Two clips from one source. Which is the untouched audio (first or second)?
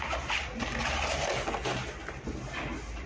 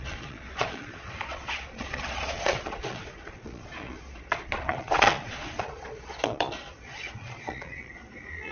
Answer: first